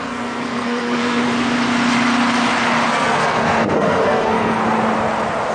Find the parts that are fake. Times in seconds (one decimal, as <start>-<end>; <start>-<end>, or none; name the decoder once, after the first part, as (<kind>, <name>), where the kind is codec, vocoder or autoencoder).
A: 0.0-1.2 (codec, SNAC); 2.9-4.6